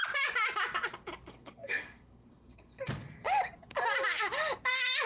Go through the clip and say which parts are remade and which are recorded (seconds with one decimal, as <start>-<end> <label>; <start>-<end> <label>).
0.0-1.3 recorded; 1.3-2.9 remade; 2.9-5.1 recorded